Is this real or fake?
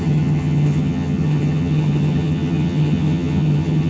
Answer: fake